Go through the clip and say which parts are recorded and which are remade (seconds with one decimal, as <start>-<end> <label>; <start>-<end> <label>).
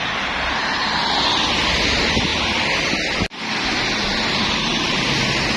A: 0.0-5.6 recorded